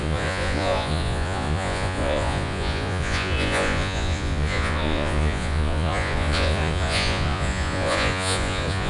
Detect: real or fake fake